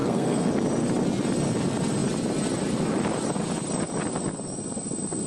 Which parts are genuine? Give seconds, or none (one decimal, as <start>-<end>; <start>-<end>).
0.5-5.3